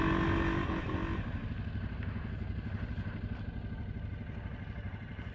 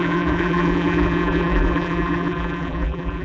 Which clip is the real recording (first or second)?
first